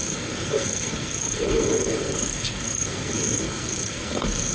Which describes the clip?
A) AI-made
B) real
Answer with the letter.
A